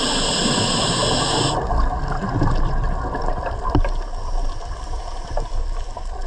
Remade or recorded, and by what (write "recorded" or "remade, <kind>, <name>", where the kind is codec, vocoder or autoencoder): recorded